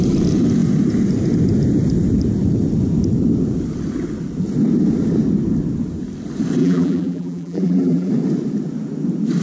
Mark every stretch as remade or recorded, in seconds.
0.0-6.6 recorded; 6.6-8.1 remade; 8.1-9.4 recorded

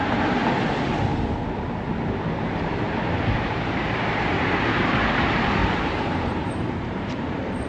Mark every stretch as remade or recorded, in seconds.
0.0-0.4 remade; 0.4-1.5 recorded; 1.5-7.7 remade